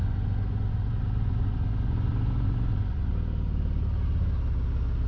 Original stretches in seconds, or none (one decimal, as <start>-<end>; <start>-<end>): 3.1-5.1